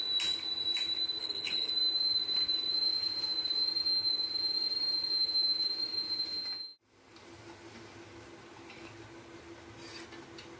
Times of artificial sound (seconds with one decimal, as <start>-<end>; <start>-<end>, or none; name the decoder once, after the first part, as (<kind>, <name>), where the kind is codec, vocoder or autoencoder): 1.2-1.7 (codec, HILCodec)